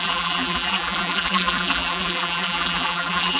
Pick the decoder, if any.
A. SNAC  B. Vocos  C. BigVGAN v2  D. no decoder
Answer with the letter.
C